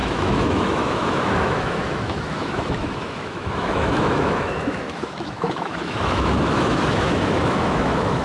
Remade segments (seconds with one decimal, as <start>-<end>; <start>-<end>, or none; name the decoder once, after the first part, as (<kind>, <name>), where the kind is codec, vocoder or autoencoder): 0.0-8.2 (autoencoder, DAC-VAE)